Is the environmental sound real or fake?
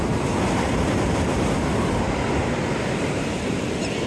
fake